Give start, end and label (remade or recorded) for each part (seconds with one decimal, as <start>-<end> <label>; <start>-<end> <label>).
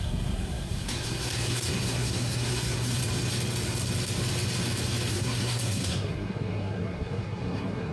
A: 0.0-3.0 remade; 3.0-5.1 recorded; 5.1-7.9 remade